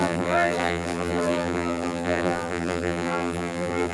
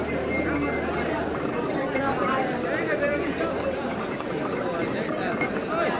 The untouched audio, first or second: second